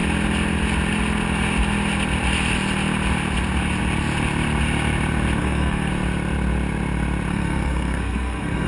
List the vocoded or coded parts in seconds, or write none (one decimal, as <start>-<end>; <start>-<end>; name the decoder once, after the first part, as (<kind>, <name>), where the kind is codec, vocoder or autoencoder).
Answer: 5.4-5.9 (codec, SNAC); 7.3-8.7